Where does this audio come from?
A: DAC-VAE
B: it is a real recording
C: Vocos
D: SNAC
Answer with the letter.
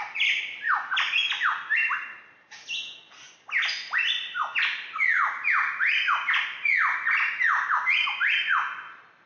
B